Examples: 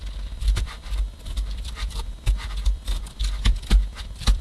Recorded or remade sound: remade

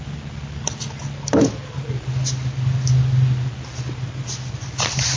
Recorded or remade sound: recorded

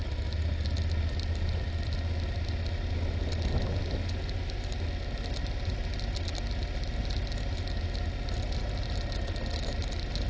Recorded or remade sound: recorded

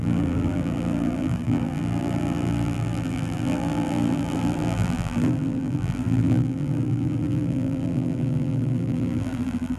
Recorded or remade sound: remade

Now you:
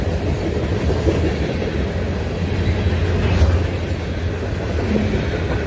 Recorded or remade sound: recorded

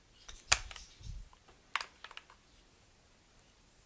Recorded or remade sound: recorded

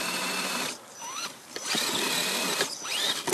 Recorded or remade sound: remade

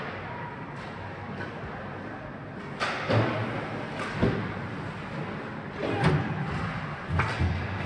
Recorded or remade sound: recorded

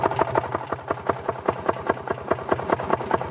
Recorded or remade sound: recorded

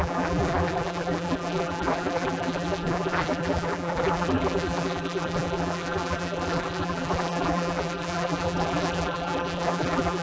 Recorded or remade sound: remade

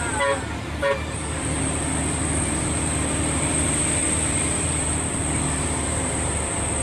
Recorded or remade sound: remade